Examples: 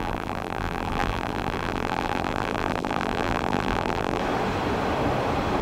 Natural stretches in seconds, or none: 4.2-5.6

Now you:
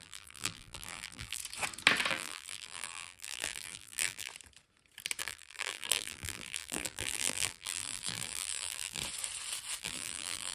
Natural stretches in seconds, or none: 1.4-2.1; 4.3-5.2; 9.0-9.8